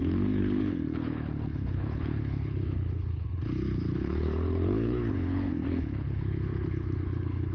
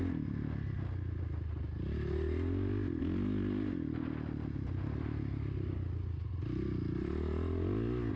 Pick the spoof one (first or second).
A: first